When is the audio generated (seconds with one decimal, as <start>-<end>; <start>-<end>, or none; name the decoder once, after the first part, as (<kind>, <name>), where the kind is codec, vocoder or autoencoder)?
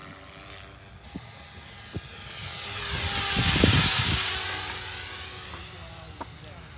3.4-4.3 (codec, DAC)